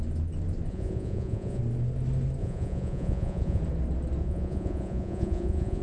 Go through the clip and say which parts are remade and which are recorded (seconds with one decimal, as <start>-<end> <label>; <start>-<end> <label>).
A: 0.0-0.7 recorded; 0.7-1.6 remade; 1.6-2.4 recorded; 2.4-3.6 remade; 3.6-4.2 recorded; 4.2-5.8 remade